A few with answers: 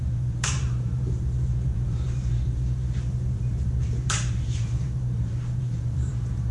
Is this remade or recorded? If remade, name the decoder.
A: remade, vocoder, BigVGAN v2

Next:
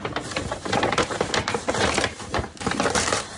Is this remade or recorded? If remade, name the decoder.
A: remade, vocoder, BigVGAN v2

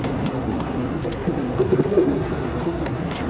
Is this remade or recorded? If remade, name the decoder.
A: remade, codec, SNAC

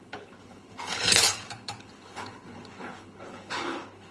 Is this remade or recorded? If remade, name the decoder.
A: remade, codec, HILCodec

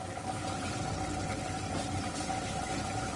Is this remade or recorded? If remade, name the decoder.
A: recorded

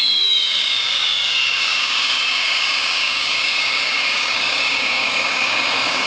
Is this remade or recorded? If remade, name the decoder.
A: remade, codec, DAC